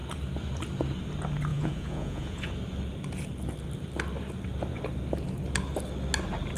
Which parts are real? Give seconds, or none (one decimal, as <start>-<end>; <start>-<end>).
0.0-1.5; 2.5-6.6

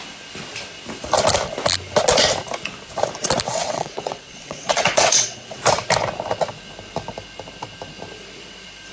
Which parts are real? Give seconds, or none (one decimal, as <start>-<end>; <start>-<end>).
0.0-3.6; 5.6-8.9

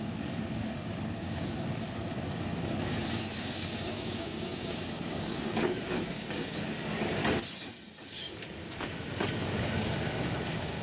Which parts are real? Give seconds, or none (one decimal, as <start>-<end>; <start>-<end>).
7.2-8.1